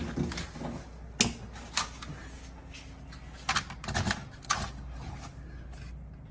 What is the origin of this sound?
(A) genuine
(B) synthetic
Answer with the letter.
A